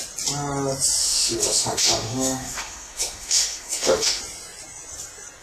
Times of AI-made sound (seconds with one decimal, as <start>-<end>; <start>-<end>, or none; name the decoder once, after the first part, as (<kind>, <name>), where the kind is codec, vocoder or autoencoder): 1.0-4.2 (autoencoder, DAC-VAE)